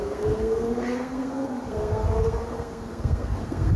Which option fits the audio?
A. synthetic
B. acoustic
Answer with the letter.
A